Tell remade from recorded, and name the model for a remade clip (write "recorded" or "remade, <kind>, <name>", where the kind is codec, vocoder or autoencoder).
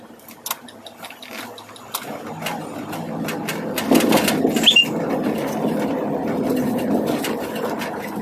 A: recorded